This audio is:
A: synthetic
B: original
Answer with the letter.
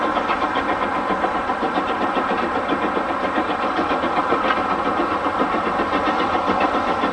B